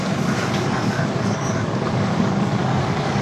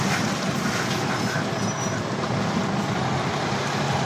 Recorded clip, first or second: second